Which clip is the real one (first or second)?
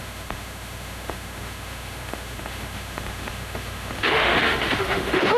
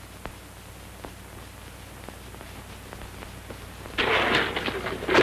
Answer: second